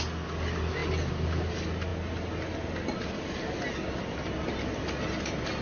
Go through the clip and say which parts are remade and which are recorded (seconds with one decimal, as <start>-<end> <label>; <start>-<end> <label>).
0.0-5.6 recorded